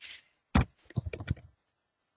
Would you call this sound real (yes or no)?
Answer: yes